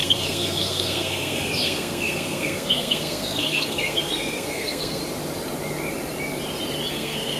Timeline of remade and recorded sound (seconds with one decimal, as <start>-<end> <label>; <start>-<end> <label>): 0.0-5.0 remade; 5.0-6.9 recorded; 6.9-7.4 remade